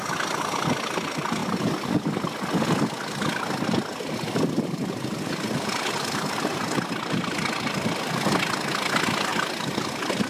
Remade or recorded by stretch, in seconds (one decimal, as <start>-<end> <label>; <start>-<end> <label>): 0.0-10.3 recorded